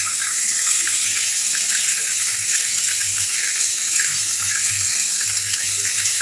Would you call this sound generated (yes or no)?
yes